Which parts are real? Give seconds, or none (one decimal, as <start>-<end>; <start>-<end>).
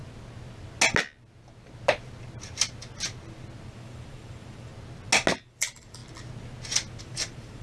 0.0-3.7; 4.7-5.4; 6.0-7.0